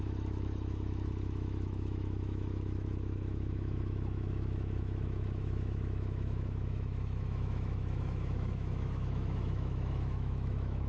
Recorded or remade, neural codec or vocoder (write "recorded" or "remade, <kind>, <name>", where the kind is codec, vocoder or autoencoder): remade, autoencoder, DAC-VAE